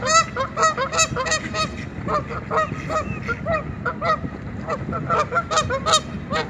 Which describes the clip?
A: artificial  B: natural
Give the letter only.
B